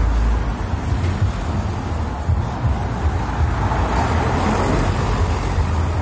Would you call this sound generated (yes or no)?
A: no